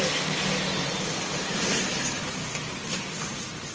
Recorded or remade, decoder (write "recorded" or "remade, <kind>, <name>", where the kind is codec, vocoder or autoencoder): recorded